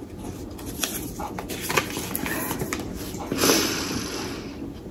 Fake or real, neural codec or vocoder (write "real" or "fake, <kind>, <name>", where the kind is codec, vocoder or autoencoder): fake, vocoder, BigVGAN v2